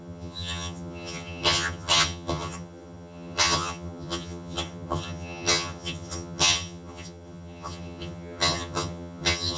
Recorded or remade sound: remade